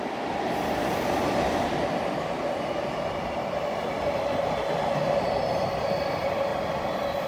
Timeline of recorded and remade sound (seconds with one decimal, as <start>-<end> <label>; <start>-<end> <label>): 0.0-7.3 recorded